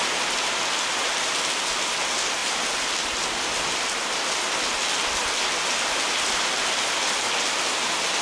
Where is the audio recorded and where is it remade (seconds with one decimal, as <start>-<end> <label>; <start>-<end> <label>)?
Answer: 0.0-8.2 recorded